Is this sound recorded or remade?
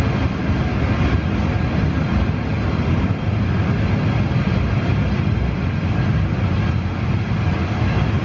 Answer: recorded